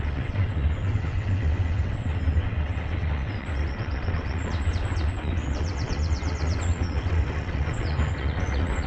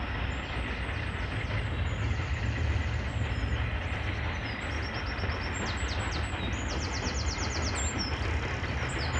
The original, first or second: second